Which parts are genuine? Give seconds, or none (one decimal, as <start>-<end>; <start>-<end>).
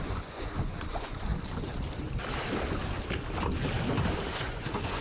1.3-4.3